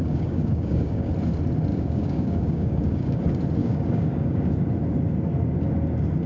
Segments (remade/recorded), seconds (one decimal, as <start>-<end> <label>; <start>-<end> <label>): 0.0-1.1 remade; 1.1-1.7 recorded; 1.7-3.2 remade; 3.2-3.6 recorded; 3.6-4.5 remade; 4.5-6.3 recorded